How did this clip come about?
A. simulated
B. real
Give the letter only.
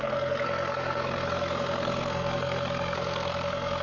A